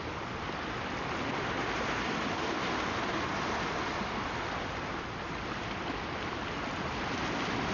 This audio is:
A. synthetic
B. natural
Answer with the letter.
B